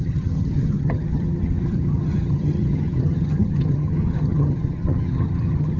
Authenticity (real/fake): fake